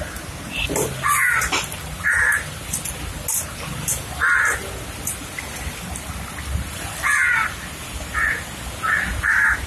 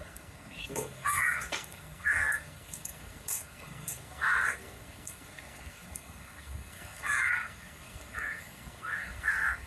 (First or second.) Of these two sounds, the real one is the first